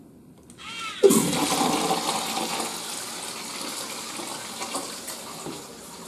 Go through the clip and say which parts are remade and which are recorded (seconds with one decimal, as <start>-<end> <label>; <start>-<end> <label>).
0.0-6.1 recorded